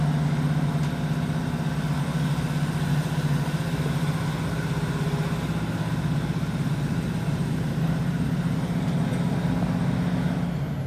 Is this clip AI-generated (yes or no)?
no